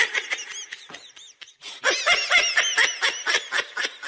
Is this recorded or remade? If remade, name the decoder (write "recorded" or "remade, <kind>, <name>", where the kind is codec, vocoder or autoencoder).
recorded